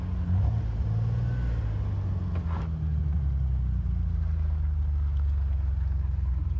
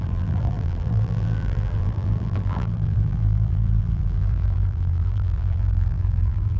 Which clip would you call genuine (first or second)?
first